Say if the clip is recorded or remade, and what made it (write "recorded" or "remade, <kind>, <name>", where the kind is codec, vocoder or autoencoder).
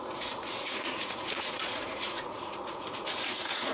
remade, vocoder, Vocos